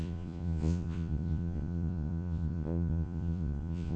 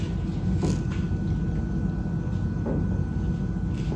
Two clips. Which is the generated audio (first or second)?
first